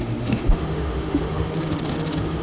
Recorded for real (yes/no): no